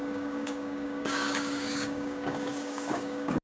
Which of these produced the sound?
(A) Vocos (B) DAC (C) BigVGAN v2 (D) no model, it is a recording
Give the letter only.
B